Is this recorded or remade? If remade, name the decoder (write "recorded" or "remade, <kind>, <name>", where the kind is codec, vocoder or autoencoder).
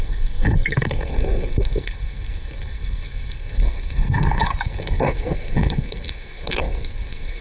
remade, codec, SNAC